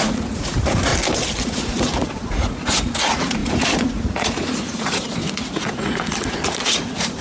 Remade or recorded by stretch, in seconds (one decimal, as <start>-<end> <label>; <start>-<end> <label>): 0.0-0.9 remade; 0.9-1.4 recorded; 1.4-7.2 remade